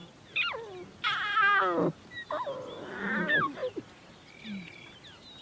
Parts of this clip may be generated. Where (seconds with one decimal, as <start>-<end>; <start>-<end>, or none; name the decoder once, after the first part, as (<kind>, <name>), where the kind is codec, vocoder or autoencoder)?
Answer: 3.6-4.3 (vocoder, BigVGAN v2)